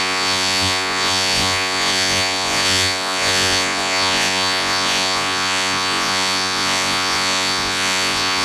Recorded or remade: remade